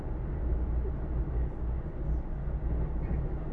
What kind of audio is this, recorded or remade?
recorded